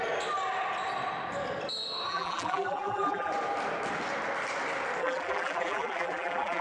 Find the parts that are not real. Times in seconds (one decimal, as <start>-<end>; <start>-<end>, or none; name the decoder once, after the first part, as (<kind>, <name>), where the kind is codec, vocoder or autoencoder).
2.1-3.3 (vocoder, BigVGAN v2); 5.0-6.6